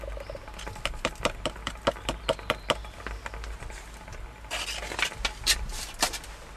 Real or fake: real